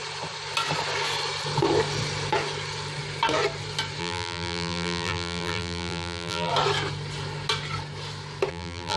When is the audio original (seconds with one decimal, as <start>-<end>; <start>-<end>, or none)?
0.0-4.0; 6.5-8.5